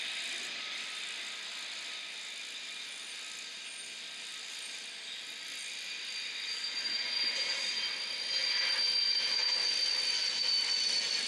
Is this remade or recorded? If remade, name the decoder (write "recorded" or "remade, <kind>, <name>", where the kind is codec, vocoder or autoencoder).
recorded